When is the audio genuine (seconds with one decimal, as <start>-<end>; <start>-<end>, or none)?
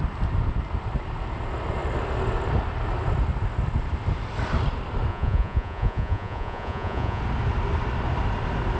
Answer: 0.0-5.1; 7.2-8.8